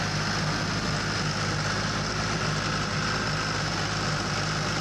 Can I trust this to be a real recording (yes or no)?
yes